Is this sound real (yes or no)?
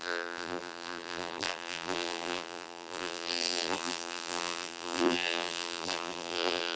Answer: no